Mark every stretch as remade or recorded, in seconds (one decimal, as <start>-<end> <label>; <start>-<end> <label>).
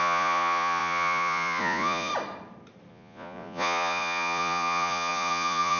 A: 0.0-2.1 remade; 2.1-2.9 recorded; 2.9-5.8 remade